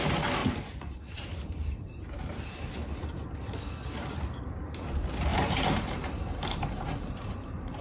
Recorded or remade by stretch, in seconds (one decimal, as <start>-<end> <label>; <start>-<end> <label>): 0.0-0.4 recorded; 0.4-2.7 remade; 2.7-5.3 recorded; 5.3-7.8 remade